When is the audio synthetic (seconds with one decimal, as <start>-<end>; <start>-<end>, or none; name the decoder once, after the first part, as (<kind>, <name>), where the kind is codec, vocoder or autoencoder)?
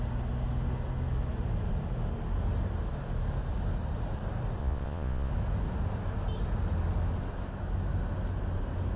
4.6-5.3 (vocoder, Vocos)